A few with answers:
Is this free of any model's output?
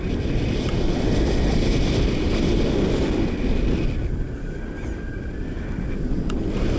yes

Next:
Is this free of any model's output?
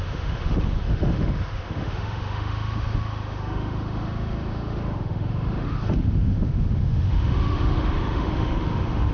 no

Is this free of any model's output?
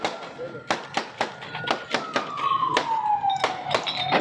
yes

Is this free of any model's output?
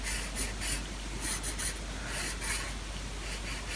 yes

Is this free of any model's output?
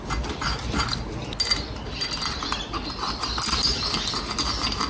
yes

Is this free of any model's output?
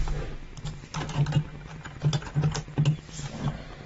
yes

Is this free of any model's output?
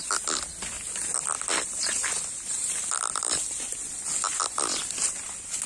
yes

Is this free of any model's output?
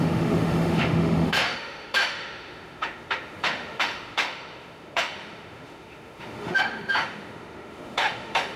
no